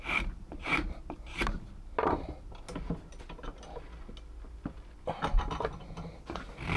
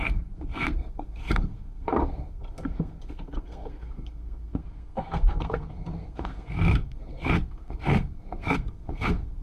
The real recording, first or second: first